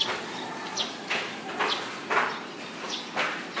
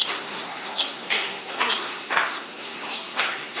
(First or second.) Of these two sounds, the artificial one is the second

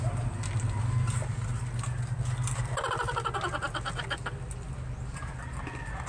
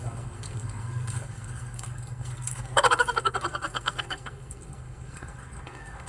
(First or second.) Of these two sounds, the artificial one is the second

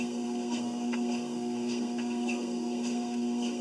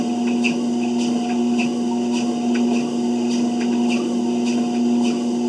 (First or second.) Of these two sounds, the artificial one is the first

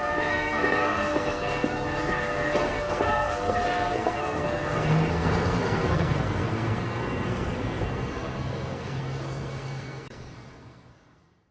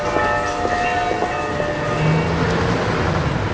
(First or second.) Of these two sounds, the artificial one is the first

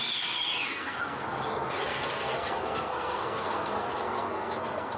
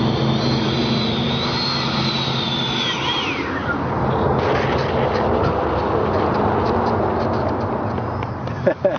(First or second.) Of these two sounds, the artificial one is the first